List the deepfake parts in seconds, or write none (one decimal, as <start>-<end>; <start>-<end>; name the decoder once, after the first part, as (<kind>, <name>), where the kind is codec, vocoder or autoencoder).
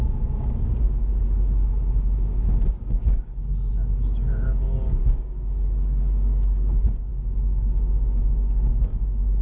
0.0-1.1 (codec, DAC); 2.0-7.1; 8.2-9.4